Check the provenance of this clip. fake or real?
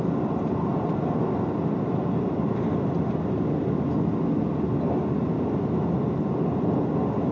real